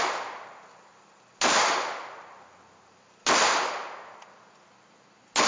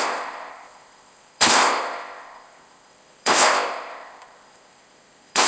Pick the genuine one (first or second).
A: first